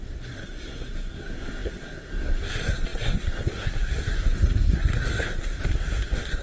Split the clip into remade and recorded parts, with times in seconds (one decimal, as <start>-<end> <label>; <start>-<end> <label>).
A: 0.0-6.4 remade